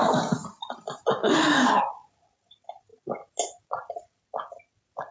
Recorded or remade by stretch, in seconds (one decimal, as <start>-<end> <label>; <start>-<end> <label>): 0.0-1.2 recorded; 1.2-1.8 remade; 1.8-5.1 recorded